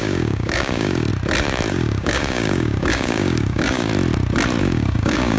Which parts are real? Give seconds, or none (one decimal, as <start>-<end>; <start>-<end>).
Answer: 1.1-1.7; 3.9-4.6